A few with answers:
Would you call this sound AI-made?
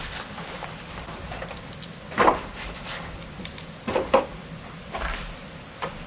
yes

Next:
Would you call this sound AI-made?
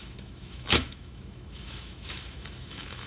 yes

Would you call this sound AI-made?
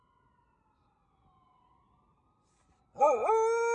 no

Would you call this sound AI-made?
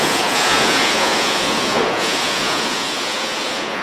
yes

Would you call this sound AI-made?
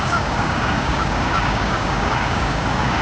yes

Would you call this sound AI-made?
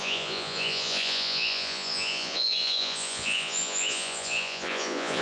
yes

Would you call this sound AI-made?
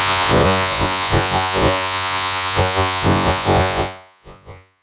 yes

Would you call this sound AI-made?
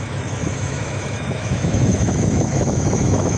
yes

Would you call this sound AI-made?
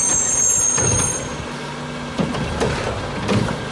no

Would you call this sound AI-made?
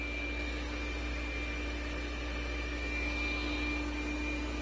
no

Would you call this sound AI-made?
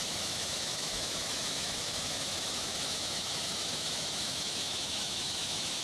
yes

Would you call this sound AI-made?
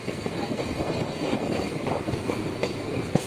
yes